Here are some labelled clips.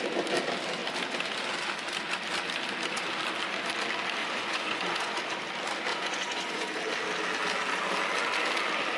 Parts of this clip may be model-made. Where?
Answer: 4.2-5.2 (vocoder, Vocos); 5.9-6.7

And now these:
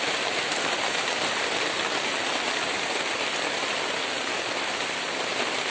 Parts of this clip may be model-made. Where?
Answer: none

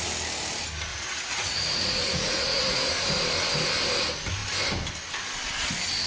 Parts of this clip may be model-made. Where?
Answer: 0.9-2.9 (vocoder, Vocos)

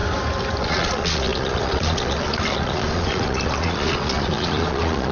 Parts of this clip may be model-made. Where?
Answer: 0.6-5.1 (vocoder, Vocos)